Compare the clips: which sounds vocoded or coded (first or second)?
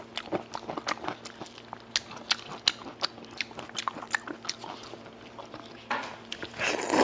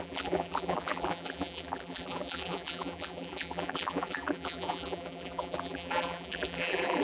second